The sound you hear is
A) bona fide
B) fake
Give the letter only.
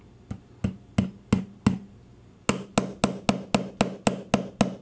A